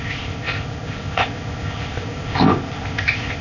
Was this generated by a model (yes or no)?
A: yes